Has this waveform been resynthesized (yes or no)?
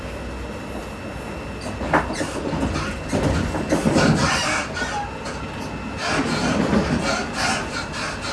no